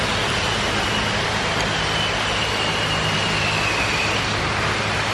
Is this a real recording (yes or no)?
yes